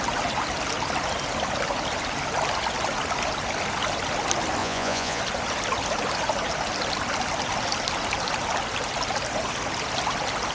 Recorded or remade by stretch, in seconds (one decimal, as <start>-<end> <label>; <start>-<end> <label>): 0.0-4.6 recorded; 4.6-5.2 remade; 5.2-10.5 recorded